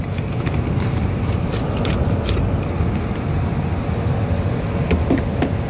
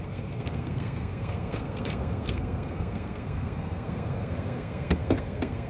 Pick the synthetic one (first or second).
second